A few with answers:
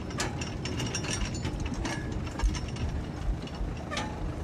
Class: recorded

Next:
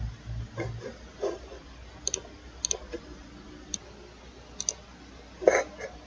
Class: recorded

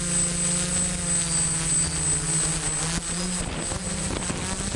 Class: recorded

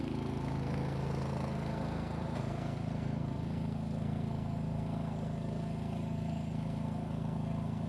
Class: remade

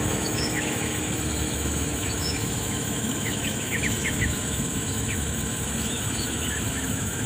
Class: remade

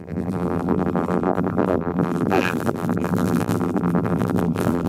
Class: remade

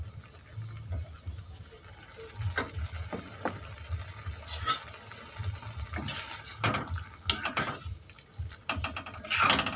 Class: recorded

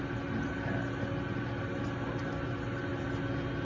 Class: recorded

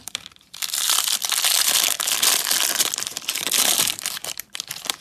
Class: remade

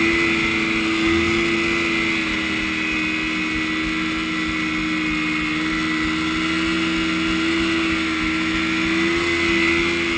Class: recorded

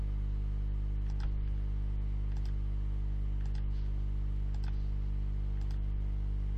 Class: recorded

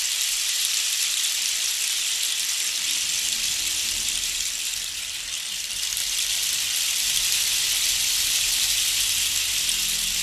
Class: remade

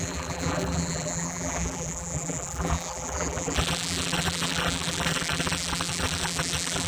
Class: remade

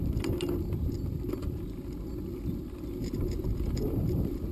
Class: recorded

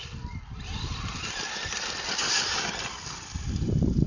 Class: recorded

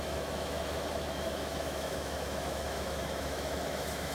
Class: remade